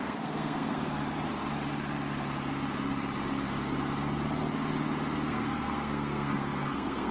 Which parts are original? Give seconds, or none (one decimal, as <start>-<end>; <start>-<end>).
1.0-5.3